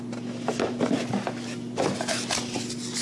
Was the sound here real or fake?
real